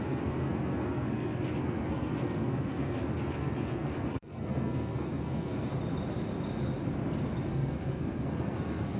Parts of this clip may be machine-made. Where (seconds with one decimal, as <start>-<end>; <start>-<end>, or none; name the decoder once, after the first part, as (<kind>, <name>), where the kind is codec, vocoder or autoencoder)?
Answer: 0.0-5.7 (codec, SNAC); 7.5-9.0